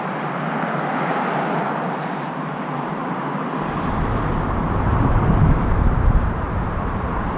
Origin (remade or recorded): remade